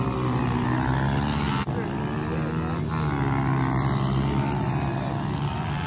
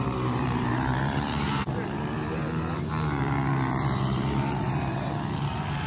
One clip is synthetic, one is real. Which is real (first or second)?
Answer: first